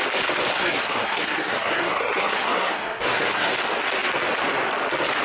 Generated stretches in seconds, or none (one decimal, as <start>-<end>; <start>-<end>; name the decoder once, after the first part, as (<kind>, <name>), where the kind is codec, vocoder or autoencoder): 0.5-3.5 (codec, SNAC)